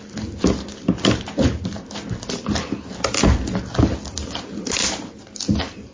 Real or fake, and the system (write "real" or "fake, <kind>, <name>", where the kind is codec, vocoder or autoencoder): real